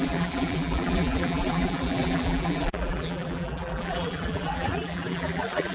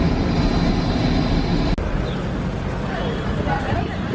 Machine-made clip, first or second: first